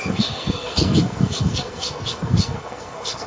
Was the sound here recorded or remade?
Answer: remade